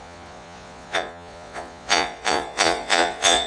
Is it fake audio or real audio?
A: fake